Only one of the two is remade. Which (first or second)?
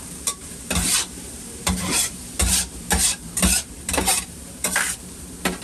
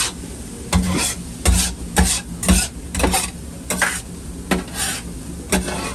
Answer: first